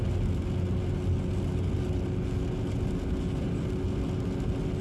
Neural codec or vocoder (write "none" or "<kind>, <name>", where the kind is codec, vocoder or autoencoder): none